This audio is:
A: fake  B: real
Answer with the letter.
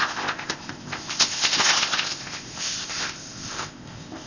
A